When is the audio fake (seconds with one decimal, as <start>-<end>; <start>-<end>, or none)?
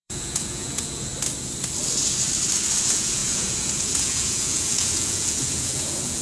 0.0-1.1; 2.8-6.2